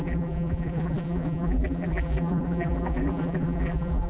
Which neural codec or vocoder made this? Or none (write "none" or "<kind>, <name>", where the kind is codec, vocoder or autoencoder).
vocoder, BigVGAN v2